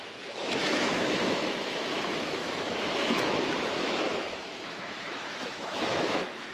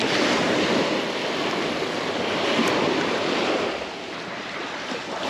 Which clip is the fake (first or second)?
first